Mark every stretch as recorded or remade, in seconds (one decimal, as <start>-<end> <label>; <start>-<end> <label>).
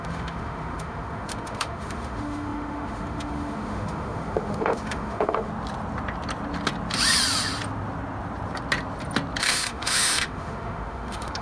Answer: 0.0-5.5 remade; 5.5-9.4 recorded; 9.4-11.4 remade